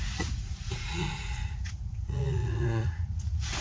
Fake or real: fake